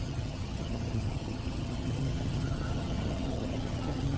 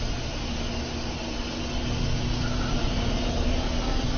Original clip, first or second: second